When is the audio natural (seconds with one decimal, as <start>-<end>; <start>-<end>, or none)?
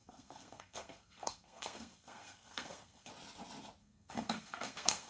3.1-3.8